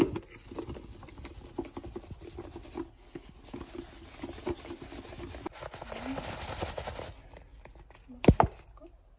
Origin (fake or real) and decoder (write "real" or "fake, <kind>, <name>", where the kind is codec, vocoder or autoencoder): real